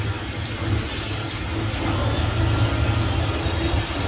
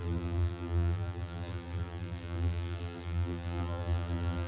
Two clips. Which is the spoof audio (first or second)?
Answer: second